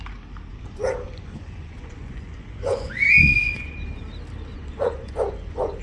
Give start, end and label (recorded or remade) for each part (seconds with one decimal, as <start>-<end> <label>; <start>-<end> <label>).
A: 0.0-0.5 recorded; 0.5-4.0 remade; 4.0-4.5 recorded; 4.5-5.8 remade